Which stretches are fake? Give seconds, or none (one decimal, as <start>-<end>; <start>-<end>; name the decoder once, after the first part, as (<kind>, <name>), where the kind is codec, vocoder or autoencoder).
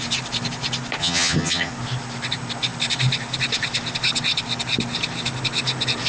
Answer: 1.0-1.7 (vocoder, HiFi-GAN)